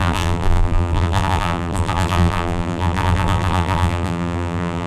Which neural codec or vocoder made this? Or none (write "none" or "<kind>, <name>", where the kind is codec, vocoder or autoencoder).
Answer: vocoder, BigVGAN v2